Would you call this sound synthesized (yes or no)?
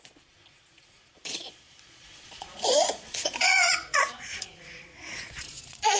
yes